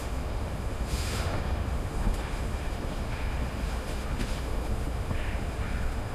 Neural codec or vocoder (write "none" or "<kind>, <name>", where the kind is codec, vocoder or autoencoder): autoencoder, DAC-VAE